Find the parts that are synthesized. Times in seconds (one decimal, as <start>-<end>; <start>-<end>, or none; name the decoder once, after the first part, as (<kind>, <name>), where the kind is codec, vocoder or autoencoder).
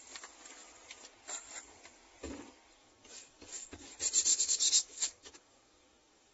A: 2.8-3.9 (codec, DAC); 4.3-6.3